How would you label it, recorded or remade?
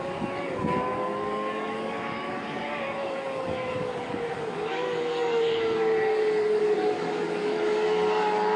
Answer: remade